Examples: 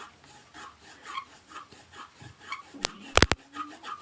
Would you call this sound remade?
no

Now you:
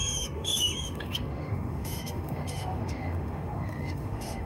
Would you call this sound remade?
yes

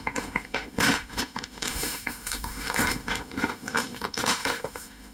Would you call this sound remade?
yes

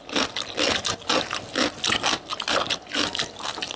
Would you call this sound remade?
no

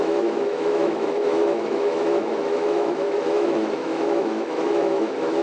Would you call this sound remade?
yes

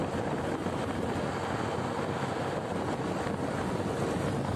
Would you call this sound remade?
no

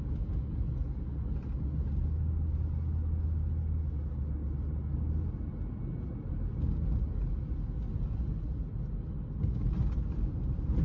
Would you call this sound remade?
no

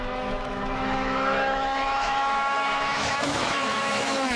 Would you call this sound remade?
yes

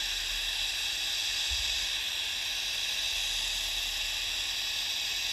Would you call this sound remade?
no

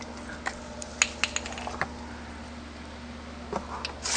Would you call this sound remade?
no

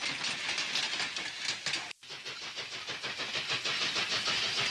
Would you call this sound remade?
no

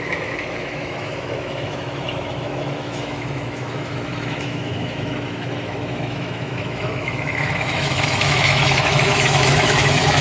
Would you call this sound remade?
yes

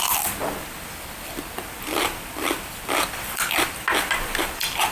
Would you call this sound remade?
no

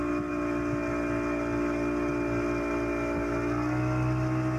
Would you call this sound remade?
no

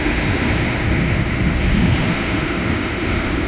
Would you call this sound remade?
yes